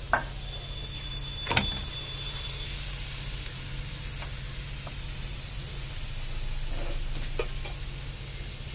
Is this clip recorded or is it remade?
recorded